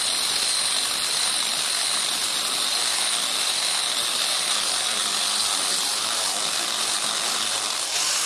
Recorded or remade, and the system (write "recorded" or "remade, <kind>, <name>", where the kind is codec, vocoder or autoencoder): recorded